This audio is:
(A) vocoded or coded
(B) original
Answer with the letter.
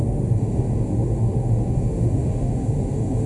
A